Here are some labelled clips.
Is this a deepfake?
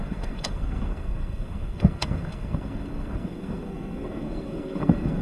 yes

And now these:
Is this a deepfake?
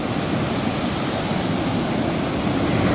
no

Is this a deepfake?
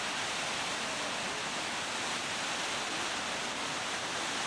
no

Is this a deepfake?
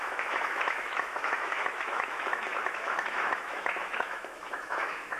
yes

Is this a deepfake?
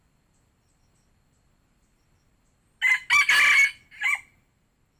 no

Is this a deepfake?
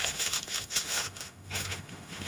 yes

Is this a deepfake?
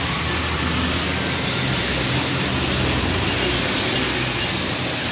no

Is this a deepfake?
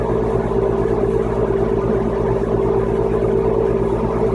no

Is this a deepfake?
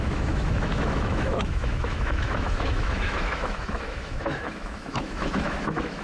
yes